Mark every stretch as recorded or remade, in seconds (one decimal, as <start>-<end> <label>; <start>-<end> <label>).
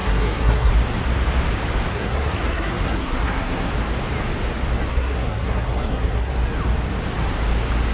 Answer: 0.0-0.7 remade; 0.7-1.9 recorded; 1.9-3.7 remade; 3.7-4.9 recorded; 4.9-6.3 remade; 6.3-7.9 recorded